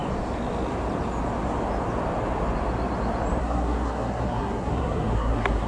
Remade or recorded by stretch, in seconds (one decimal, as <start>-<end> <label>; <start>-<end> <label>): 0.0-3.4 recorded; 3.4-5.7 remade